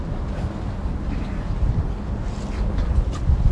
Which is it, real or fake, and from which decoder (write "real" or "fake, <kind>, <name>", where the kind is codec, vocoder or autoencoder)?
real